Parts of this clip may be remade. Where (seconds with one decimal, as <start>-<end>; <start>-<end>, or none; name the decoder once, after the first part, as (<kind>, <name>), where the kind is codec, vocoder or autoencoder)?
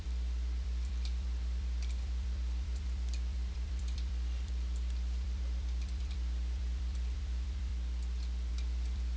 0.0-7.7 (vocoder, BigVGAN v2); 8.5-9.2